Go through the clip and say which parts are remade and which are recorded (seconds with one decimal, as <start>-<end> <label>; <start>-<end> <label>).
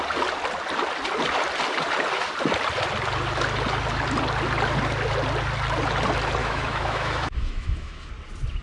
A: 0.0-6.4 recorded; 6.4-8.1 remade; 8.1-8.6 recorded